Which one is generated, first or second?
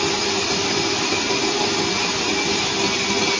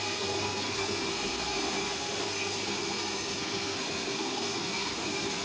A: second